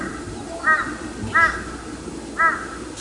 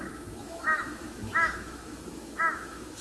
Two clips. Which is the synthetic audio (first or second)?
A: second